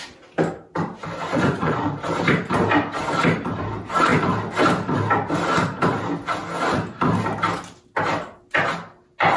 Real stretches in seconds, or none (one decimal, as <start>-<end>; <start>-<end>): 0.0-1.3; 1.8-9.4